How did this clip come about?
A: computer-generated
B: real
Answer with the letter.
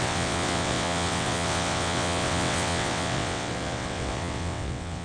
A